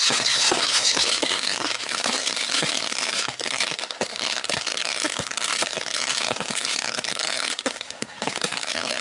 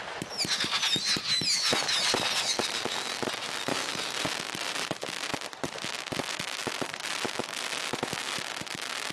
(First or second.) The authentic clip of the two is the second